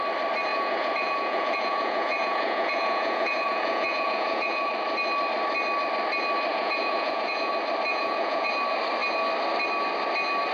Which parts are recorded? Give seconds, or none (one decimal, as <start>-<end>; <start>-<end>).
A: 0.0-0.5; 4.7-6.5; 7.5-7.9; 8.5-10.5